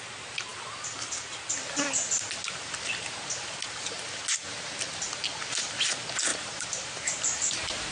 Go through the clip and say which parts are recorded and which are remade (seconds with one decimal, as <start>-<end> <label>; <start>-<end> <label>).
0.0-6.3 recorded; 6.3-7.5 remade; 7.5-7.9 recorded